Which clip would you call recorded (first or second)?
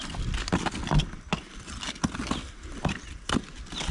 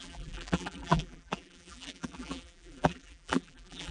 first